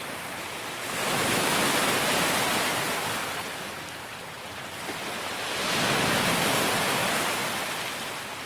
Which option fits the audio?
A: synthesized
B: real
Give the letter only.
B